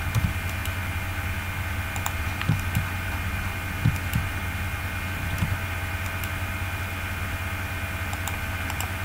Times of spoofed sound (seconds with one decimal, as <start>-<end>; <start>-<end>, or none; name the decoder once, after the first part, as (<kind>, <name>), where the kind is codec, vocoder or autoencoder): none